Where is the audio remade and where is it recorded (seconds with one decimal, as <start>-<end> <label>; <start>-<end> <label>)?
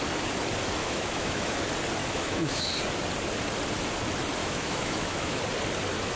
0.0-0.8 recorded; 0.8-1.5 remade; 1.5-2.0 recorded; 2.0-2.7 remade; 2.7-4.4 recorded; 4.4-5.4 remade; 5.4-6.2 recorded